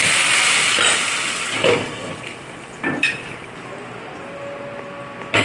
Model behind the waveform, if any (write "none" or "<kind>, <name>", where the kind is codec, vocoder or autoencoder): none